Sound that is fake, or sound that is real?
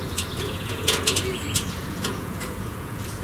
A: fake